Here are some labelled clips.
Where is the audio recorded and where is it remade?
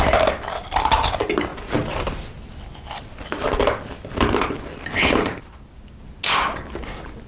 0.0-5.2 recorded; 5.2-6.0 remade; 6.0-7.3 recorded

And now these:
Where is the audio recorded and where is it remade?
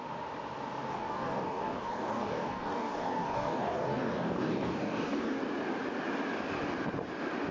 0.0-0.9 recorded; 0.9-5.4 remade; 5.4-7.5 recorded